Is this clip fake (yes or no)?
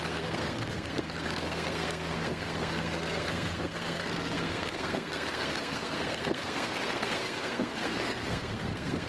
yes